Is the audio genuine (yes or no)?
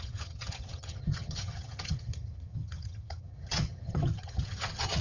no